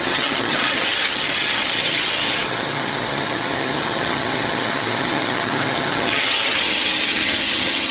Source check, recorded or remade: remade